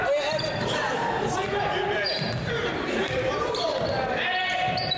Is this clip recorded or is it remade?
remade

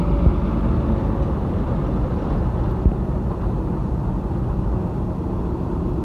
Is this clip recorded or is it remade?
recorded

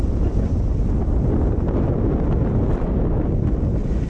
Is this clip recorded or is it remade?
recorded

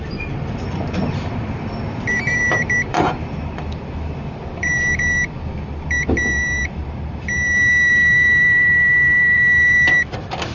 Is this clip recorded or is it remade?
remade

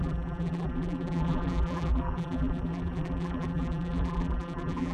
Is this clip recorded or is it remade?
remade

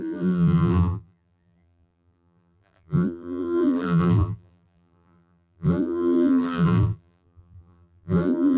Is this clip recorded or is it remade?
remade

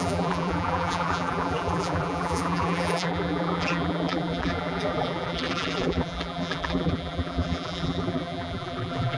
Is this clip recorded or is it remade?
remade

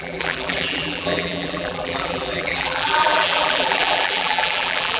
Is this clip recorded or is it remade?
remade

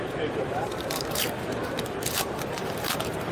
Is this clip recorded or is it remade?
remade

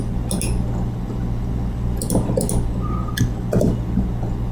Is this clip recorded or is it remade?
recorded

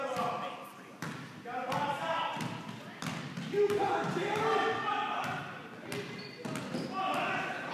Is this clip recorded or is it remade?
recorded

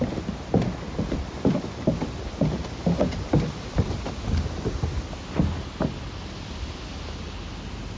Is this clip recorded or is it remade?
recorded